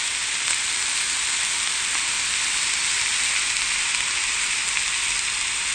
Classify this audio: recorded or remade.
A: recorded